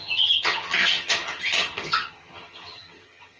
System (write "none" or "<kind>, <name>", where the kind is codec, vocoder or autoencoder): vocoder, HiFi-GAN